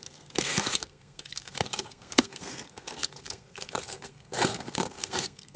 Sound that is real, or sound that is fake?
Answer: fake